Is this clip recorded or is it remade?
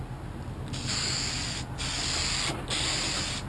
recorded